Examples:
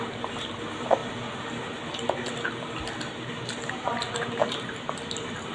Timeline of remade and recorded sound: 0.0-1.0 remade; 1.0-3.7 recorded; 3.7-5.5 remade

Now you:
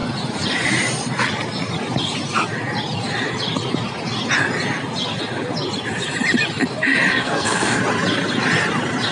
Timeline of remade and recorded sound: 0.0-7.1 recorded; 7.1-7.8 remade; 7.8-9.1 recorded

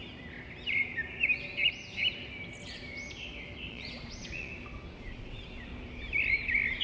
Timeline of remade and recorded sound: 0.0-3.7 recorded; 3.7-4.5 remade; 4.5-5.0 recorded; 5.0-5.7 remade; 5.7-6.8 recorded

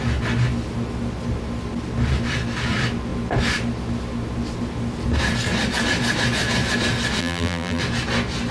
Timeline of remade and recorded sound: 0.0-7.2 recorded; 7.2-7.8 remade; 7.8-8.5 recorded

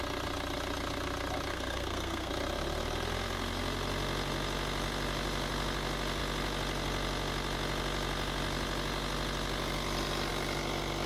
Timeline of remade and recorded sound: 0.0-1.5 recorded; 1.5-2.3 remade; 2.3-11.1 recorded

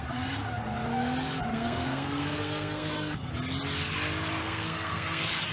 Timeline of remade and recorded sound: 0.0-0.4 remade; 0.4-1.5 recorded; 1.5-3.3 remade; 3.3-4.4 recorded; 4.4-5.5 remade

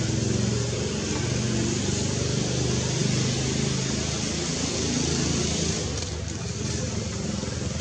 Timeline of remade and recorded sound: 0.0-7.8 recorded